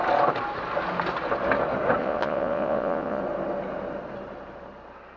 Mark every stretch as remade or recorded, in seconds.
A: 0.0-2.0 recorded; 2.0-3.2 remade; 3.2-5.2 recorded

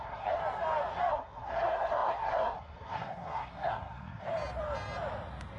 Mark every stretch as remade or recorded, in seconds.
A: 0.0-0.4 remade; 0.4-1.1 recorded; 1.1-4.3 remade; 4.3-5.6 recorded

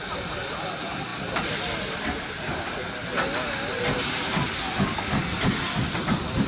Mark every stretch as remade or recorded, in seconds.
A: 0.0-6.5 remade